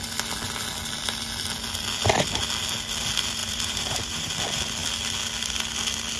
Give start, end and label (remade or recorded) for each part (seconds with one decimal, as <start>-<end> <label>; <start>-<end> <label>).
0.0-3.4 recorded; 3.4-4.3 remade; 4.3-6.2 recorded